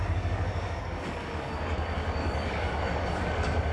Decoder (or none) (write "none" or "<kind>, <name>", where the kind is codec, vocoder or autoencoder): codec, DAC